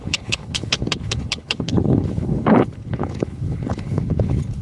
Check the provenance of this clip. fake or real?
fake